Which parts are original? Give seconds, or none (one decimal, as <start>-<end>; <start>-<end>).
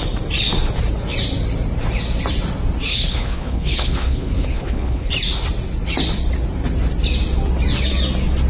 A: 0.0-2.9; 5.1-8.5